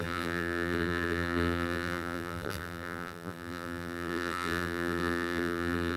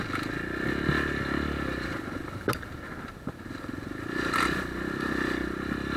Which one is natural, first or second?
second